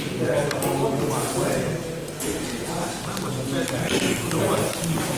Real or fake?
real